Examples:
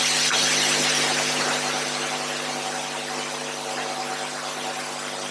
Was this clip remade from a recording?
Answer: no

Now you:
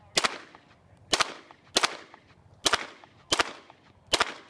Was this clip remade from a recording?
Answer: no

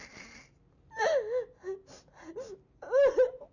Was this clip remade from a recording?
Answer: no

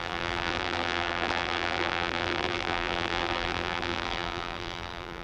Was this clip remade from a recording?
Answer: yes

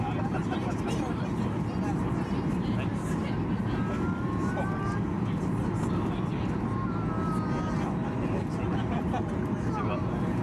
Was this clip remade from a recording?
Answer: no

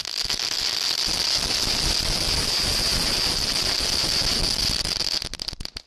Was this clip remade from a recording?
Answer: no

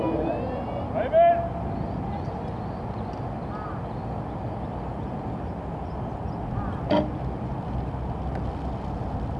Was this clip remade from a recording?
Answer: no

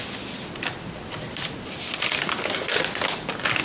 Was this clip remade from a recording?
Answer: no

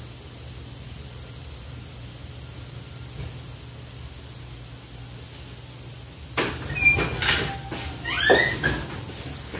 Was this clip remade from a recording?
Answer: no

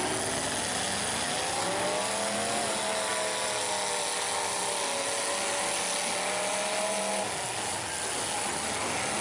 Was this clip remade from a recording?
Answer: no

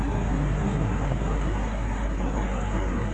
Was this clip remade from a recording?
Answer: yes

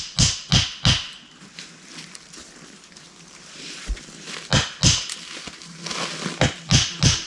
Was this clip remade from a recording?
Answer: no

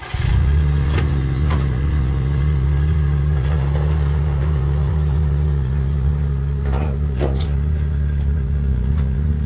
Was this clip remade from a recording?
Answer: yes